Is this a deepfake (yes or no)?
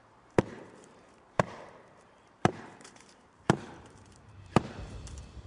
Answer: yes